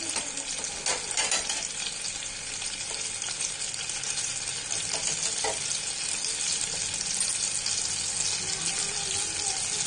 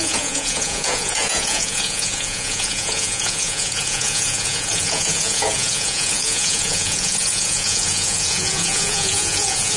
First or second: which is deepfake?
second